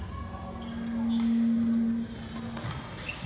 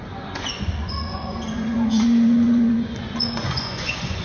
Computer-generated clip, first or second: second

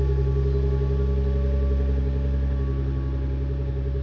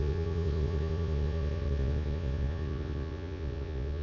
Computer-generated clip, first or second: second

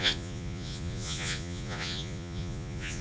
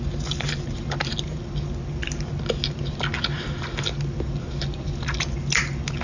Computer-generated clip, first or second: first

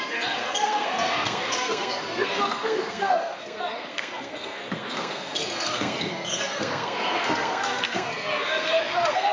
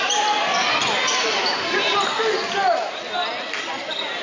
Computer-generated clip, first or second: first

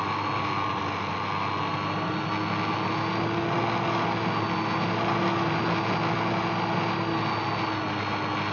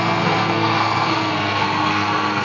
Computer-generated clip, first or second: second